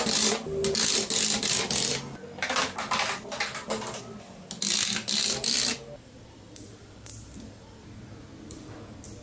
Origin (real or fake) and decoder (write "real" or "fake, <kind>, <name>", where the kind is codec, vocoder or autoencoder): real